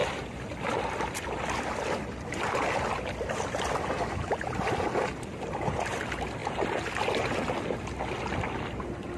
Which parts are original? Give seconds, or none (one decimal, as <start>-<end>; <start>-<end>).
0.0-9.2